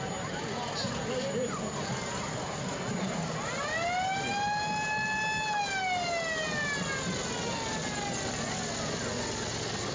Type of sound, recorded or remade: recorded